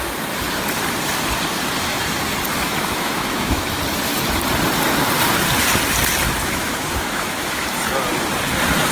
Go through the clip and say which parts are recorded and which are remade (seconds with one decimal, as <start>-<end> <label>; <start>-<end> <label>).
0.0-2.5 recorded; 2.5-3.8 remade; 3.8-6.4 recorded; 6.4-7.7 remade; 7.7-8.9 recorded